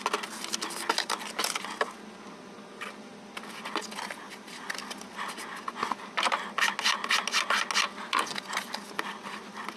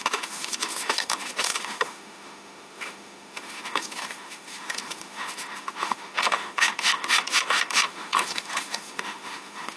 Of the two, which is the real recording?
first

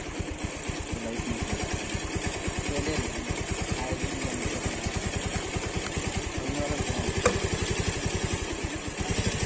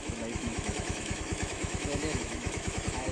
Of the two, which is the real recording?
first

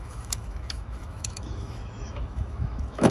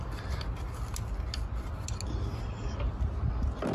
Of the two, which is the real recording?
second